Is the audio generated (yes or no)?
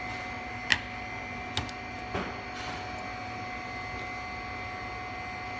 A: no